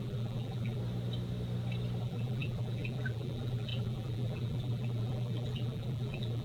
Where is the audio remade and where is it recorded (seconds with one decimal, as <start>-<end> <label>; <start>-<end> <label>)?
0.0-0.8 remade; 0.8-2.0 recorded; 2.0-6.4 remade